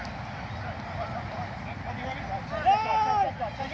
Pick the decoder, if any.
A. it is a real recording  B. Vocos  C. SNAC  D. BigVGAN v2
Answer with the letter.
A